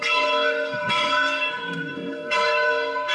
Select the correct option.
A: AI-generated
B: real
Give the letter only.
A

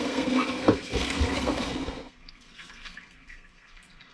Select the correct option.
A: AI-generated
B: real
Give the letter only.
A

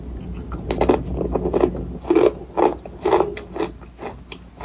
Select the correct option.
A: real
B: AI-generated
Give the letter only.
A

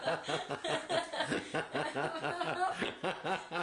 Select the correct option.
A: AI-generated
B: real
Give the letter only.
B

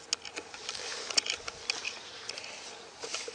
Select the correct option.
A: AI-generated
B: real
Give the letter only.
B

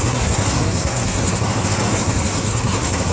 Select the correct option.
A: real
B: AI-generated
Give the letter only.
B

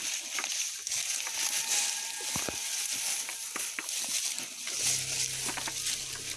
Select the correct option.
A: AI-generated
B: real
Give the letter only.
B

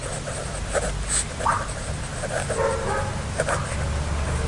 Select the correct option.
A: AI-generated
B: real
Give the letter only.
B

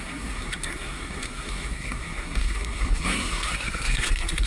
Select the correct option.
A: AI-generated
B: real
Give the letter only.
A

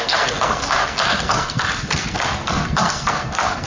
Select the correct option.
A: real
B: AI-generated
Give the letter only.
B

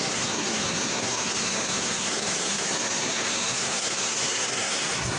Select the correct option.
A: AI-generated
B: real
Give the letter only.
A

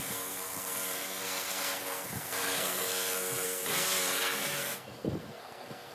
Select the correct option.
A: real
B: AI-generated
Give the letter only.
B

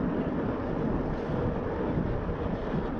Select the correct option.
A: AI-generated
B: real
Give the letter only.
B